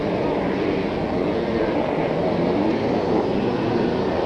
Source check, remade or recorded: recorded